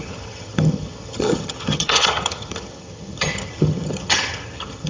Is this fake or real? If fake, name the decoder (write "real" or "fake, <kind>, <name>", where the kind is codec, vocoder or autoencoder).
fake, vocoder, HiFi-GAN